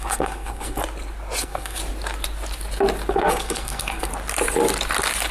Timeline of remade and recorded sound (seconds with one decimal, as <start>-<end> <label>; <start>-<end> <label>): 0.0-0.8 remade; 0.8-1.4 recorded; 1.4-1.8 remade; 1.8-3.1 recorded; 3.1-4.1 remade; 4.1-5.3 recorded